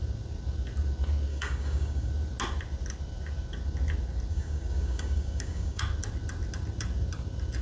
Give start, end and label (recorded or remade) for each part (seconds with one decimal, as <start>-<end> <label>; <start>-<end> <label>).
0.0-1.3 recorded; 1.3-2.1 remade; 2.1-4.3 recorded; 4.3-5.8 remade; 5.8-7.6 recorded